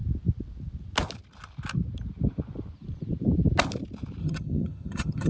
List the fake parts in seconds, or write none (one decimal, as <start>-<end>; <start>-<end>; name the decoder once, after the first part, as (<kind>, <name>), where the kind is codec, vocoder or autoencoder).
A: 4.2-5.3 (vocoder, HiFi-GAN)

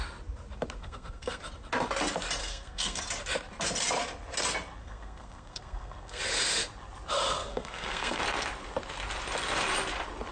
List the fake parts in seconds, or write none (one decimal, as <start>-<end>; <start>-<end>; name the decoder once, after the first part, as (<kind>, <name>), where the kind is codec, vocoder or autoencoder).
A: 0.8-1.4 (codec, SNAC); 2.4-3.0; 4.8-6.2; 7.4-8.2

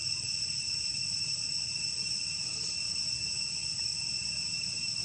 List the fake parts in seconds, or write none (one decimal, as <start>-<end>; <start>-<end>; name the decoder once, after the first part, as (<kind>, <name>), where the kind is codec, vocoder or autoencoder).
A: 0.0-3.0 (vocoder, BigVGAN v2)

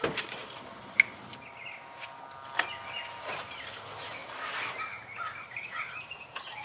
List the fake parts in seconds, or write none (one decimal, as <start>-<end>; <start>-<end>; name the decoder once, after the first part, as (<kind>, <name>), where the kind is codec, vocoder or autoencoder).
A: 0.0-0.4 (vocoder, BigVGAN v2); 3.2-4.2; 4.7-6.6

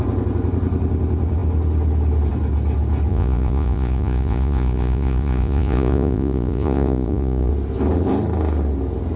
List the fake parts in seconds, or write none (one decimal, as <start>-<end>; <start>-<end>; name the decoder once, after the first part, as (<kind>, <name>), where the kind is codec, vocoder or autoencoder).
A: 3.1-7.5 (vocoder, Vocos)

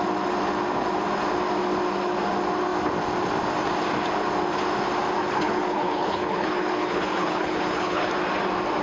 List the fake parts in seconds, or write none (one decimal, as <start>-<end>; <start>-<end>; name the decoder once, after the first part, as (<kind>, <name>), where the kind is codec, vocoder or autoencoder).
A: 5.2-8.1 (codec, HILCodec)